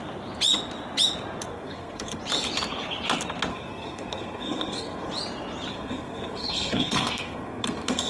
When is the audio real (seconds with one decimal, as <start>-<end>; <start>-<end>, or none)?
0.0-1.5; 2.2-3.5; 5.1-5.7